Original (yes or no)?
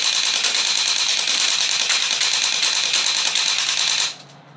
yes